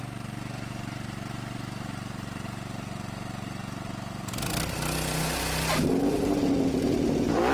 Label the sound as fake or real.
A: real